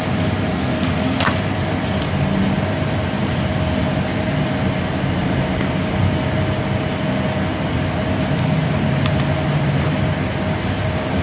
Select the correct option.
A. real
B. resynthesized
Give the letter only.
A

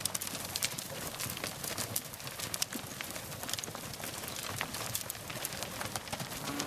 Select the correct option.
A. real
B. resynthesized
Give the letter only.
A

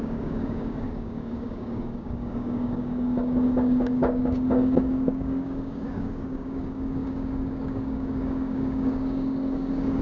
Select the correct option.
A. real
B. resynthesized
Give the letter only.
B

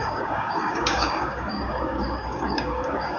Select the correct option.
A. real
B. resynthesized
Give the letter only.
B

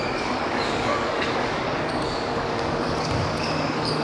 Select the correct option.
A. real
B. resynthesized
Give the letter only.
B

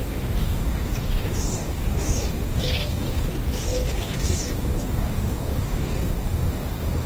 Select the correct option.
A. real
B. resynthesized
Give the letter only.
B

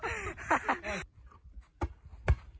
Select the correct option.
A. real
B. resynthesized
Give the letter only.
A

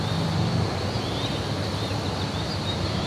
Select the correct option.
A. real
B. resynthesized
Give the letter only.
A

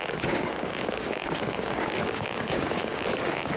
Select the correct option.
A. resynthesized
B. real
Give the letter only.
A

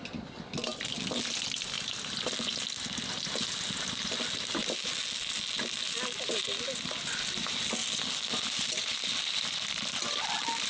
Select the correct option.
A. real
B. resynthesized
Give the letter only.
A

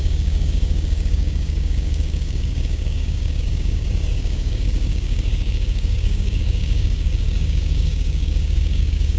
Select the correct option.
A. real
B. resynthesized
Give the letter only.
B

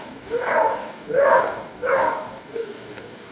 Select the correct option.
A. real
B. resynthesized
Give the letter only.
B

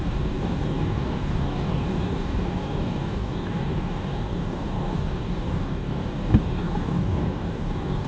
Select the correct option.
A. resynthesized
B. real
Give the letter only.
A